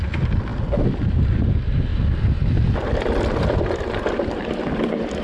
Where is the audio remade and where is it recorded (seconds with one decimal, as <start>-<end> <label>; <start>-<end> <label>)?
0.0-0.5 remade; 0.5-1.5 recorded; 1.5-5.2 remade